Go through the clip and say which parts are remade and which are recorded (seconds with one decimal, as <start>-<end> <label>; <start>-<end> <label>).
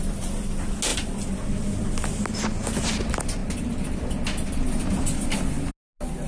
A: 0.0-6.3 recorded